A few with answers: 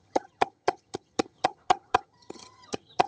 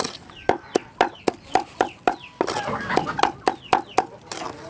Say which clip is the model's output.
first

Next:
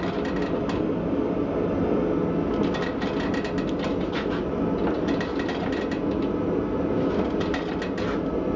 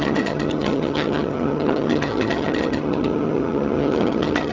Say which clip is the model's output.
second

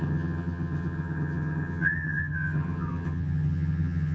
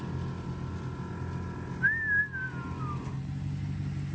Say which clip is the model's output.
first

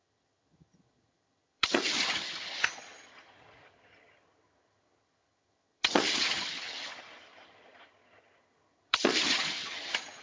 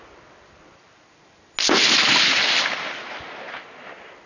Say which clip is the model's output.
first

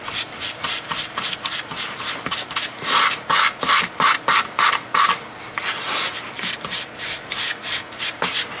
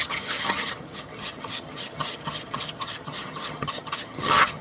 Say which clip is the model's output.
second